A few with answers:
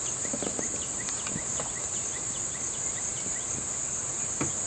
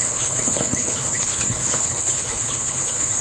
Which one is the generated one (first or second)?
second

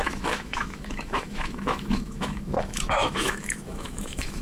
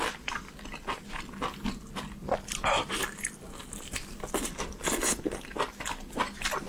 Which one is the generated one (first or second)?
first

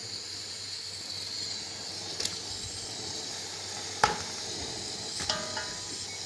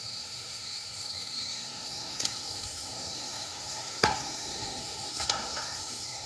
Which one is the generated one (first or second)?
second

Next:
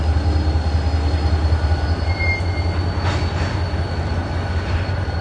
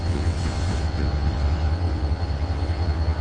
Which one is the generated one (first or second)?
second